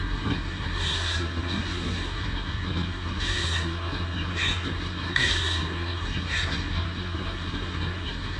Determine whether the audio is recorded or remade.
remade